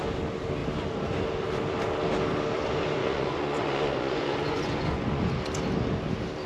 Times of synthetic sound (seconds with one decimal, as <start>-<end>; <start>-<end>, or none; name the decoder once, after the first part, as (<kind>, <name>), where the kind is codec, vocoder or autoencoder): 3.0-5.3 (vocoder, Vocos)